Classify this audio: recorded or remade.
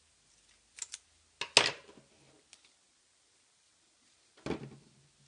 recorded